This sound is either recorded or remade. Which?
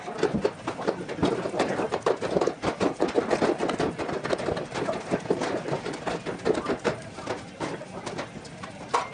recorded